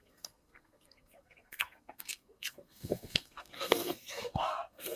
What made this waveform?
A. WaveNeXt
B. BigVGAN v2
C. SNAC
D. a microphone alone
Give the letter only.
C